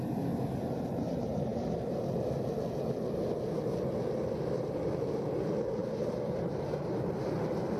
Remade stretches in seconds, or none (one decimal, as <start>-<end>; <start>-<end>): 5.8-7.8